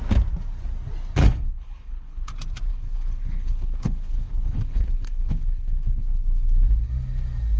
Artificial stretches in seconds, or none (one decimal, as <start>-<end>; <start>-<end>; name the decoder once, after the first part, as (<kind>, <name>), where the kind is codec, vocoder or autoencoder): 1.2-2.3 (codec, HILCodec); 2.7-6.9